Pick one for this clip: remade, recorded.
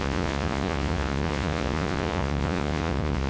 remade